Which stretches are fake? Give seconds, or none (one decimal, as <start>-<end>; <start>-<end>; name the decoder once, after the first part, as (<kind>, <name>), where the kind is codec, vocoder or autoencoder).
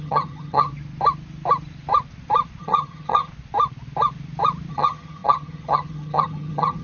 0.0-0.7 (vocoder, HiFi-GAN); 2.6-3.3; 4.7-6.8